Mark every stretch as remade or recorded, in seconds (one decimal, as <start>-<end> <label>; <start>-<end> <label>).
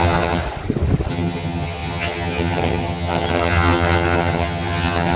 0.0-0.4 remade; 0.4-1.1 recorded; 1.1-5.2 remade